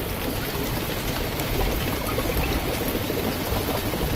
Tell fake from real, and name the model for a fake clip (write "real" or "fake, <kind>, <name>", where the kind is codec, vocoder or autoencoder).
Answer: real